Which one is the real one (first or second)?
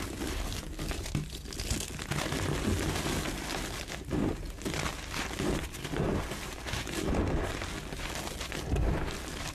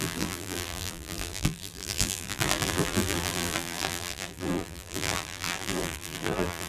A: first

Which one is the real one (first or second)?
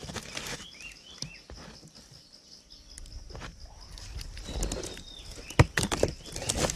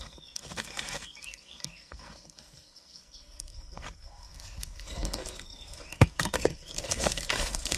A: first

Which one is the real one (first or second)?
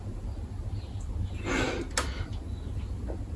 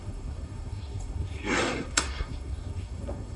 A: first